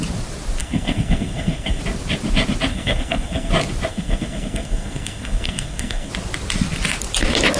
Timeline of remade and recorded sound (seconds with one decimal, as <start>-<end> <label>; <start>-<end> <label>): 0.0-0.6 recorded; 0.6-1.8 remade; 1.8-2.7 recorded; 2.7-3.5 remade; 3.5-3.9 recorded; 3.9-6.1 remade; 6.1-7.6 recorded